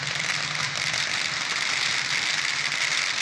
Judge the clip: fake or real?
fake